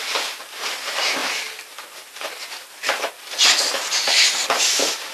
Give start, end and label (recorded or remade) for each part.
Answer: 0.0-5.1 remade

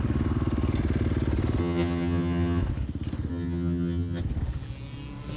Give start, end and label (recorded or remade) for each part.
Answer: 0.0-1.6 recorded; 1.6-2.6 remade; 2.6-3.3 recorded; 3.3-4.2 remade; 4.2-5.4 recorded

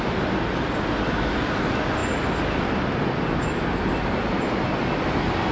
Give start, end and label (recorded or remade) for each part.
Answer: 0.0-5.5 recorded

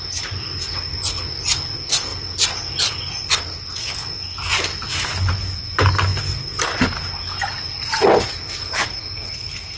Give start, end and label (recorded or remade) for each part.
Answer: 0.0-9.8 recorded